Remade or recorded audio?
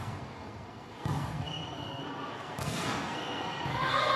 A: remade